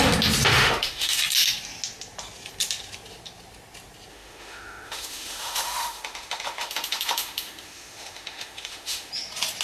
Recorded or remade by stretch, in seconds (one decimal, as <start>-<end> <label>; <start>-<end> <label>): 0.0-0.5 recorded; 0.5-1.2 remade; 1.2-4.1 recorded; 4.1-9.1 remade; 9.1-9.6 recorded